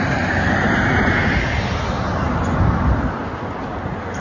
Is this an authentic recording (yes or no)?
yes